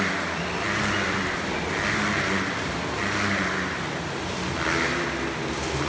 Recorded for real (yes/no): yes